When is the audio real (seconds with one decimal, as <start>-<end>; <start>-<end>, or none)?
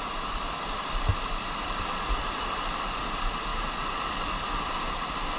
3.5-4.1